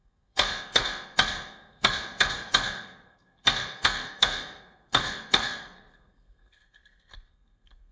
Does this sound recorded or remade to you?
remade